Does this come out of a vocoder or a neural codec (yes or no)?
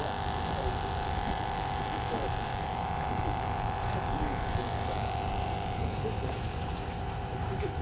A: yes